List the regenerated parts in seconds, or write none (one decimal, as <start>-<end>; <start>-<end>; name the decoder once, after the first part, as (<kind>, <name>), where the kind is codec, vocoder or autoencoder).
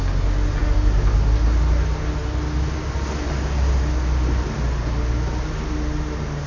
none